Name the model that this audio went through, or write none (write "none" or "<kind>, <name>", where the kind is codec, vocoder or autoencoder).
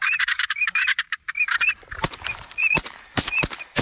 vocoder, BigVGAN v2